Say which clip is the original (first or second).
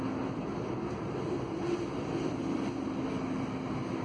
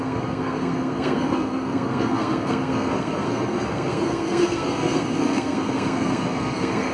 first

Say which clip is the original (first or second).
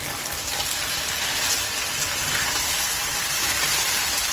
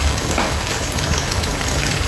first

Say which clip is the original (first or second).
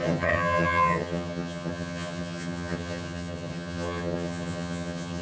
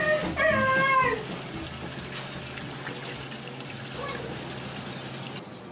second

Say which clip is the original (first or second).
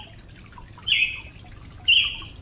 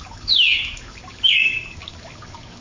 first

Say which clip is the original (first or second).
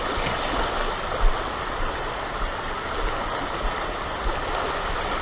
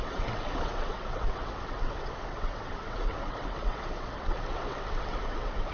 first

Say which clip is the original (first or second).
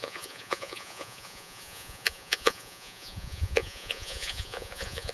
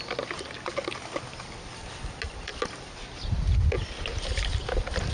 second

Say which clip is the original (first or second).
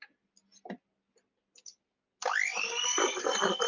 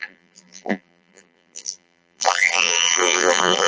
first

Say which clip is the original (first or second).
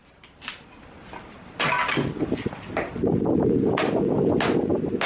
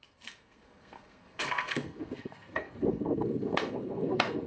first